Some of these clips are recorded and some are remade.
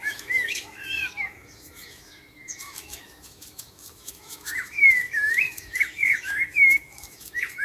remade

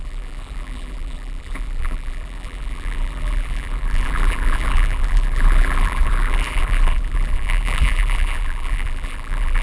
remade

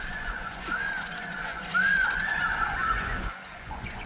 remade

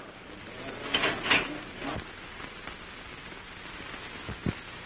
recorded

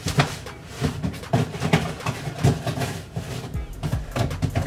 recorded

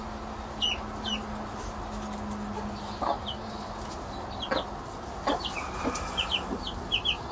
recorded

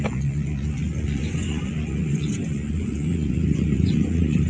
remade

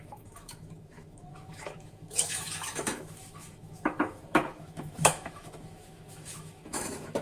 remade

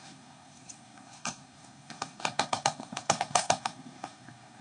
remade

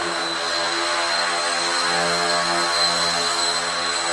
recorded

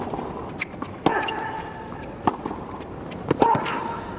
recorded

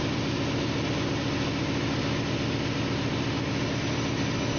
recorded